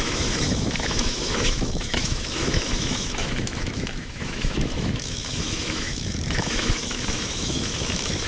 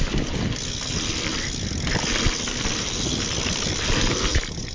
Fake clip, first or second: first